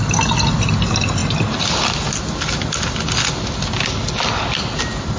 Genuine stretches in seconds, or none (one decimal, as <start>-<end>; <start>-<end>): 0.0-5.2